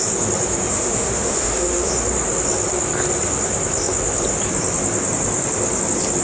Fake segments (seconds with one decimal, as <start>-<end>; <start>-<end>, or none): 0.7-1.9